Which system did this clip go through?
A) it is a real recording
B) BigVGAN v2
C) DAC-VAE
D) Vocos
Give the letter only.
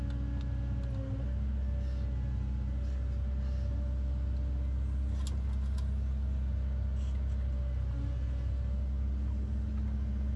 A